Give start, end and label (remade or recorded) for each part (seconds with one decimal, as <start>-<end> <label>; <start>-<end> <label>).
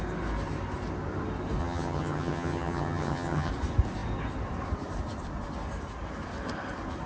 0.0-1.6 recorded; 1.6-3.5 remade; 3.5-7.1 recorded